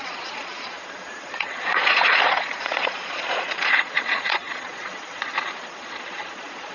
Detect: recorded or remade remade